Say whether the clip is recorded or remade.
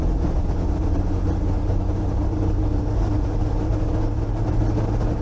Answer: recorded